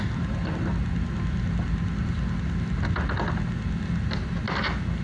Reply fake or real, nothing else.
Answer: real